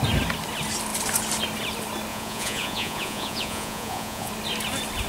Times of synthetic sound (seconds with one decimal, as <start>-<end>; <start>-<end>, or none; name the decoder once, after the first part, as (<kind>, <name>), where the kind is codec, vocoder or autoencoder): 2.1-4.3 (vocoder, Vocos)

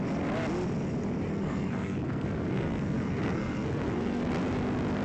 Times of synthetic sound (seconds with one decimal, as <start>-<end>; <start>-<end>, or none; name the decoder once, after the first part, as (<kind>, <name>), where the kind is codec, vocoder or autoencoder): 1.3-4.3 (codec, SNAC)

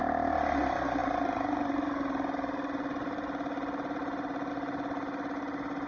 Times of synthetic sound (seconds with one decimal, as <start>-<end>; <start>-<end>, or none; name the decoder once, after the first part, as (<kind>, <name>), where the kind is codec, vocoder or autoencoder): 1.0-4.5 (vocoder, BigVGAN v2)

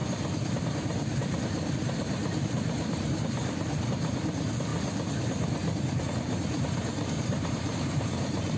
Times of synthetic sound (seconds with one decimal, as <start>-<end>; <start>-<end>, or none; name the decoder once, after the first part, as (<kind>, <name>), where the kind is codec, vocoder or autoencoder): 0.6-4.7 (vocoder, BigVGAN v2); 6.0-8.6

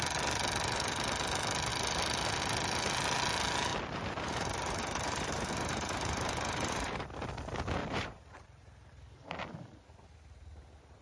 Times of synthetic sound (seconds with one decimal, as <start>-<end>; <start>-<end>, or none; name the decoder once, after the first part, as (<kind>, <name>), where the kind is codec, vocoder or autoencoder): 3.7-7.3 (vocoder, BigVGAN v2); 7.8-8.9

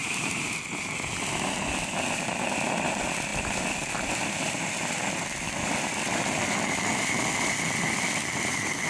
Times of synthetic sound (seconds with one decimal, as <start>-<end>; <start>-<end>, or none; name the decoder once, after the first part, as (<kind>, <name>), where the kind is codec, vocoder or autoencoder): 0.0-0.6 (vocoder, BigVGAN v2)

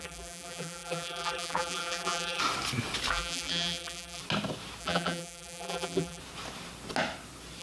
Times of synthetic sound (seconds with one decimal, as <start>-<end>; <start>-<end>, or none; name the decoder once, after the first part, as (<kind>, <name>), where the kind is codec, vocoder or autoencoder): 0.0-2.4 (vocoder, BigVGAN v2); 3.1-4.2; 4.8-6.2